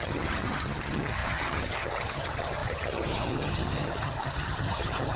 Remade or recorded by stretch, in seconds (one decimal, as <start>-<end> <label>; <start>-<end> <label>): 0.0-5.2 remade